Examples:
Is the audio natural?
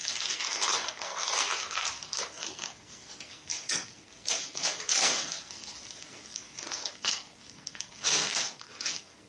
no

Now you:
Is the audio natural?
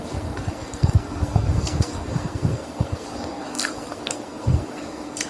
no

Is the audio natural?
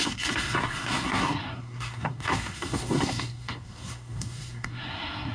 no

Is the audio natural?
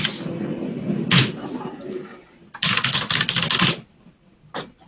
yes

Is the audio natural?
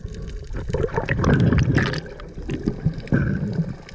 yes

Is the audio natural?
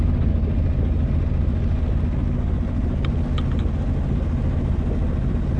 yes